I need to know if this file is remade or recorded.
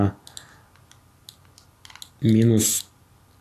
recorded